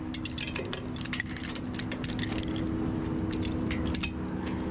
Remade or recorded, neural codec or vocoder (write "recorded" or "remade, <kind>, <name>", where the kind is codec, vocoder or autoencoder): recorded